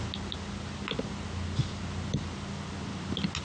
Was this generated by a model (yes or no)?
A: no